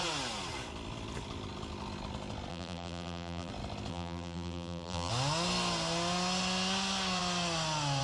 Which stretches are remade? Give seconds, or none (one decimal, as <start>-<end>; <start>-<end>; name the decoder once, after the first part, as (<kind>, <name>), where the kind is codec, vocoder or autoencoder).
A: 2.5-3.5 (vocoder, BigVGAN v2); 3.9-5.1